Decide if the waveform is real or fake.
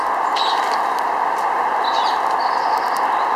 real